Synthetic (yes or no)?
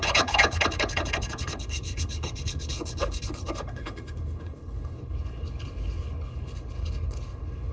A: yes